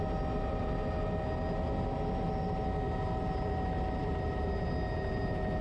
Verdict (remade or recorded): recorded